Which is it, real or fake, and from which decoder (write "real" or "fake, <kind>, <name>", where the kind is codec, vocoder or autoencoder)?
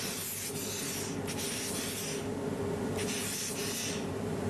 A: real